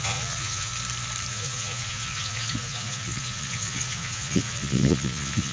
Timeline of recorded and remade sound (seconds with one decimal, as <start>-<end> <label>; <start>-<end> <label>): 0.0-0.7 remade; 0.7-1.3 recorded; 1.3-5.5 remade